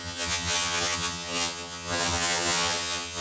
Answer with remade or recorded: remade